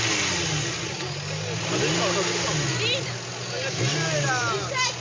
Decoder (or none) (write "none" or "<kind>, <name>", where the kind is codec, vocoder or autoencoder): none